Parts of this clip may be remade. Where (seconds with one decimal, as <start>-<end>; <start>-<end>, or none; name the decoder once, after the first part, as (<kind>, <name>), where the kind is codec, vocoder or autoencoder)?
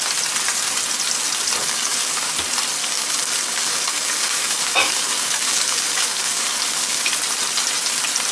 1.6-2.3 (codec, DAC); 2.8-7.1